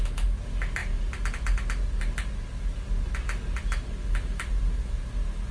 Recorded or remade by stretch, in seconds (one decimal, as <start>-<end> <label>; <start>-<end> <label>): 0.0-5.5 recorded